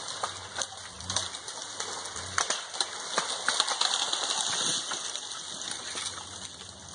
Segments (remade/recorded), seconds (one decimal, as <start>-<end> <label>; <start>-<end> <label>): 0.0-6.9 recorded

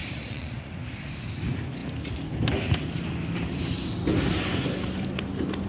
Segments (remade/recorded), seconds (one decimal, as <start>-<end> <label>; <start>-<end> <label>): 0.0-0.7 remade; 0.7-5.7 recorded

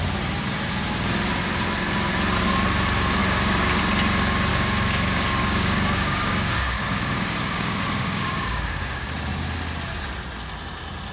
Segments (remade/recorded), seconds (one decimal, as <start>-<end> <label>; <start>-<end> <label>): 0.0-3.2 recorded; 3.2-3.8 remade; 3.8-4.5 recorded; 4.5-9.1 remade; 9.1-11.1 recorded

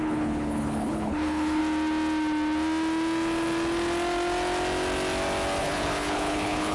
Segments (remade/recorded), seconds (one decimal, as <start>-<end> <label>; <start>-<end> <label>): 0.0-1.6 remade; 1.6-5.6 recorded; 5.6-6.7 remade

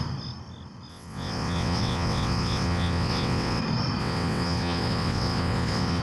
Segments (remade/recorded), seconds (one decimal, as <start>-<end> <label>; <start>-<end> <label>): 0.0-0.9 recorded; 0.9-3.6 remade; 3.6-4.0 recorded; 4.0-6.0 remade

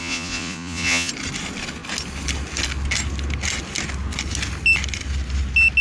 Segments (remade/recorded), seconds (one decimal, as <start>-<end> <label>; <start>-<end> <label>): 0.0-1.1 remade; 1.1-5.8 recorded